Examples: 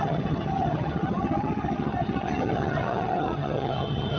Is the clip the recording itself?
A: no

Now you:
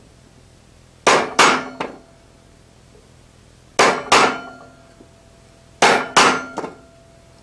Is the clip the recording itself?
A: yes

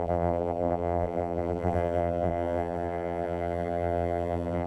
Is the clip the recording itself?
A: no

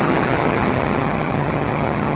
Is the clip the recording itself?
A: no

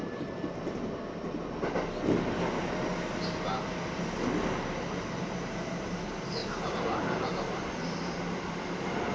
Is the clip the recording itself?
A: yes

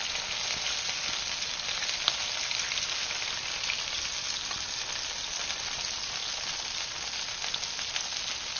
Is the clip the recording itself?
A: yes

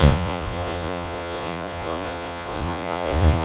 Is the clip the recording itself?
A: no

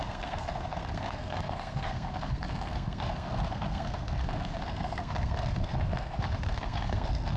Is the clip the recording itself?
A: no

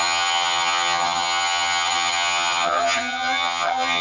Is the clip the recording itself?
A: no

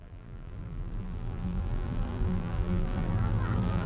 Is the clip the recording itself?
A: no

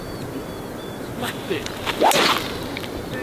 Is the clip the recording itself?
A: yes